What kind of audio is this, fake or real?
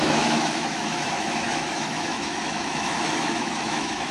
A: fake